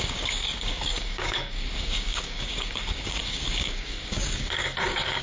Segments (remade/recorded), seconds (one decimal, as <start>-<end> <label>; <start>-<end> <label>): 0.0-5.2 remade